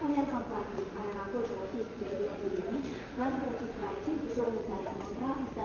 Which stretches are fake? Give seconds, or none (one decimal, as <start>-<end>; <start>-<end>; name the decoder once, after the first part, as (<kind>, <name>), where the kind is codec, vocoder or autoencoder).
0.0-1.0 (vocoder, Vocos); 1.7-5.6